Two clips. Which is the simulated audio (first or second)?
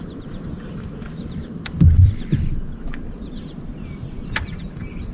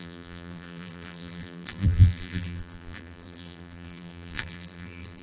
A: second